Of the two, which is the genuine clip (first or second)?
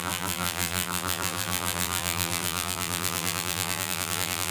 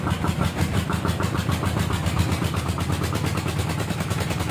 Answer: second